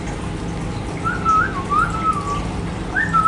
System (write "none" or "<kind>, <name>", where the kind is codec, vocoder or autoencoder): none